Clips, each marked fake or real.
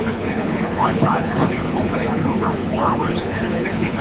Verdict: fake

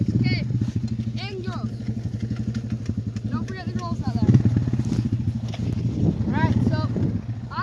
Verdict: real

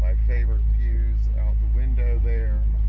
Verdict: real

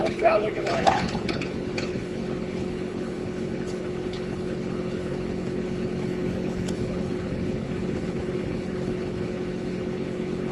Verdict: fake